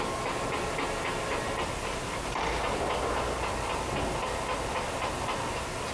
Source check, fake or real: real